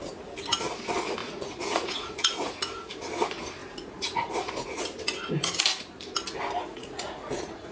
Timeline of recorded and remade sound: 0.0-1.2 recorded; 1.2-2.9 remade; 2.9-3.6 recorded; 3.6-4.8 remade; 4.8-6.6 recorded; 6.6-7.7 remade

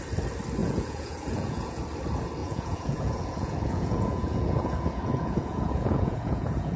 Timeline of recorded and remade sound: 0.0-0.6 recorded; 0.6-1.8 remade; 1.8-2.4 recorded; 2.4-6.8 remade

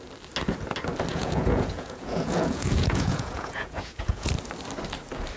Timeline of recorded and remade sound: 0.0-1.1 recorded; 1.1-4.3 remade; 4.3-5.4 recorded

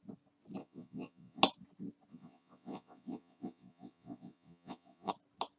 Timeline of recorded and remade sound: 0.0-0.6 recorded; 0.6-1.4 remade; 1.4-2.1 recorded; 2.1-5.1 remade; 5.1-5.6 recorded

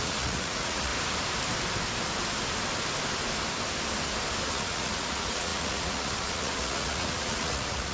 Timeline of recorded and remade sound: 0.0-0.9 remade; 0.9-4.5 recorded; 4.5-7.9 remade

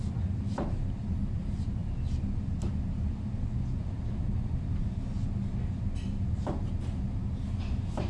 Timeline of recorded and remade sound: 0.0-8.1 recorded

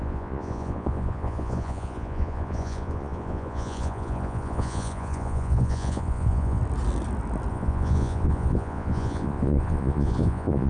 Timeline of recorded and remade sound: 0.0-6.6 remade; 6.6-7.5 recorded; 7.5-10.7 remade

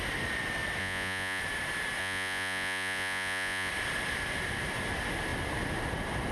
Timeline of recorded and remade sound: 0.0-0.8 recorded; 0.8-1.4 remade; 1.4-2.0 recorded; 2.0-3.7 remade; 3.7-6.3 recorded